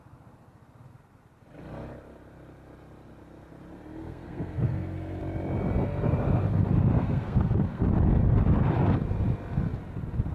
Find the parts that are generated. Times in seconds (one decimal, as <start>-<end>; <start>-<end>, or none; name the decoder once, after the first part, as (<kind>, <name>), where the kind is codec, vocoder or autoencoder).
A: 4.0-5.2 (codec, SNAC); 7.0-7.8